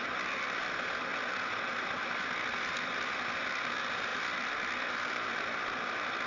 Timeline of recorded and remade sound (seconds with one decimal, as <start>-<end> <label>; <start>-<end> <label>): 0.0-6.3 recorded